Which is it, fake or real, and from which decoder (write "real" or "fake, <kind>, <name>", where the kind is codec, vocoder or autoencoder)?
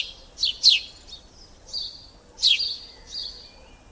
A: real